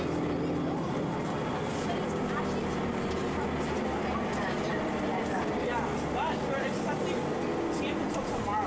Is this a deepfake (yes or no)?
no